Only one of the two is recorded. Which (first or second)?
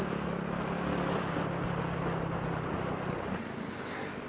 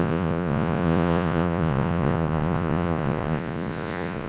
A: first